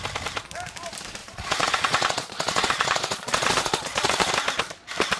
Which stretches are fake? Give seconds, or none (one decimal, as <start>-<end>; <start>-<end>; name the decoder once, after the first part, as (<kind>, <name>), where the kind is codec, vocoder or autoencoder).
1.2-4.3 (vocoder, Vocos)